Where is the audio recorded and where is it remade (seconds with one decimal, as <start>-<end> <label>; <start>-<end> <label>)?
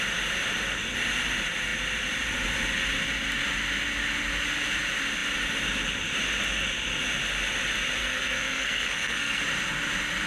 0.0-8.0 recorded; 8.0-9.4 remade; 9.4-10.3 recorded